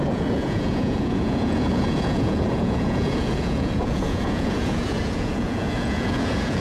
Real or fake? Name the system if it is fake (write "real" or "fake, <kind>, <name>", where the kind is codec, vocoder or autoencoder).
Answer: fake, vocoder, Vocos